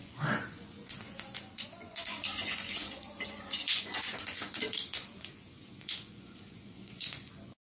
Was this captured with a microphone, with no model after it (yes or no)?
no